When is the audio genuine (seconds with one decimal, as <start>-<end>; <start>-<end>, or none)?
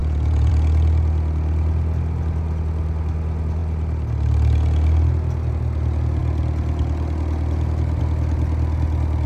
0.5-9.3